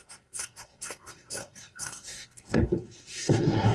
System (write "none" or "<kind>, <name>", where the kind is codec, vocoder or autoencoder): codec, SNAC